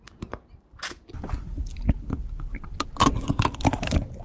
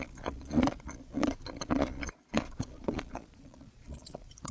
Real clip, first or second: first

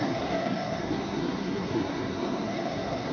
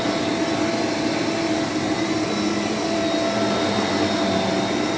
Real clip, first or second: second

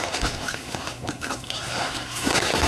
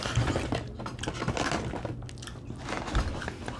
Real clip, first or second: second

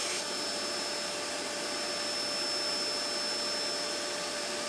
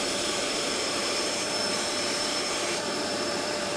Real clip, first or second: first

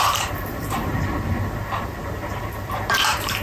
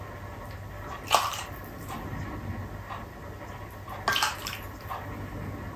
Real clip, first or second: second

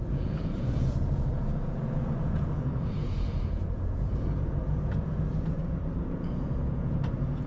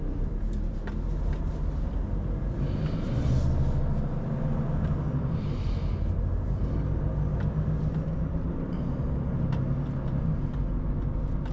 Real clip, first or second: second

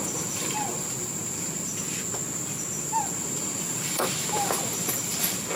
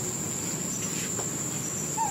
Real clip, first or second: second